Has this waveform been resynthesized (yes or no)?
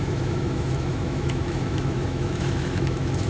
yes